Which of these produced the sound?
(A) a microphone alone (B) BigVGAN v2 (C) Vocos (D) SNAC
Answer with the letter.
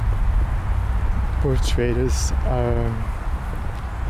A